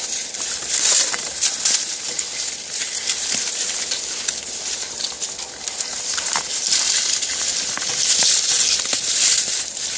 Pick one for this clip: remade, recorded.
remade